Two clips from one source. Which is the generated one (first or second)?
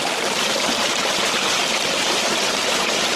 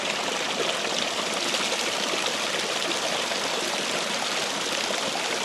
first